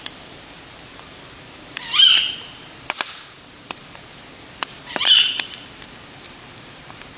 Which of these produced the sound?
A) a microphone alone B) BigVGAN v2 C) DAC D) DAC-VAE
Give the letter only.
B